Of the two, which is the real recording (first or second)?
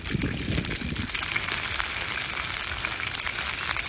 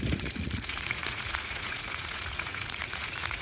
first